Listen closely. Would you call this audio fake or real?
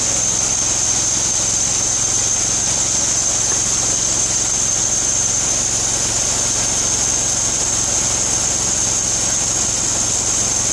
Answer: real